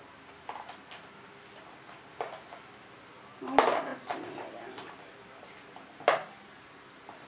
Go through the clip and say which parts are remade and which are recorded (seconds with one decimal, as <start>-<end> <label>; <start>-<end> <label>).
0.0-7.3 recorded